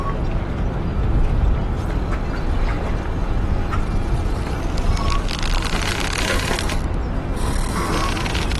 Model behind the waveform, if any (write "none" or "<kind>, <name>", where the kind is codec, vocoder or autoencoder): none